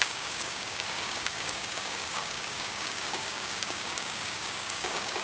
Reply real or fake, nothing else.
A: fake